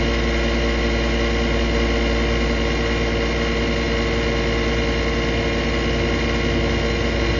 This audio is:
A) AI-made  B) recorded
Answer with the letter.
B